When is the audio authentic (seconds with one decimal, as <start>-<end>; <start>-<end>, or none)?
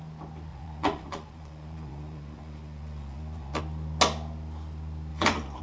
0.0-0.5; 3.6-5.1